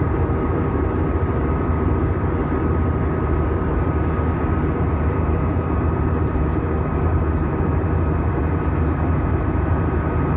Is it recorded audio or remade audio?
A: remade